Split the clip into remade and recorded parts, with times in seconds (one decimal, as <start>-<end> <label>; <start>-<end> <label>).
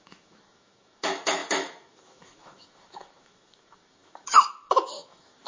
0.0-5.5 remade